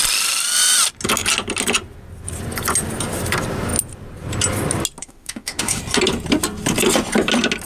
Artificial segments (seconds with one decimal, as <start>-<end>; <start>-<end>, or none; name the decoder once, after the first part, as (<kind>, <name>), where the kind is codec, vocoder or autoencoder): 5.0-5.8 (autoencoder, DAC-VAE)